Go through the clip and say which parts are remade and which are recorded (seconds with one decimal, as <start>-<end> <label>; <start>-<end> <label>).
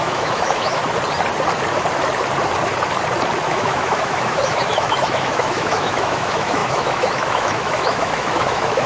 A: 0.0-0.8 remade; 0.8-3.5 recorded; 3.5-8.9 remade